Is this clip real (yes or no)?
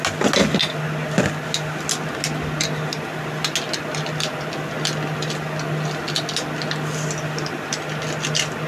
yes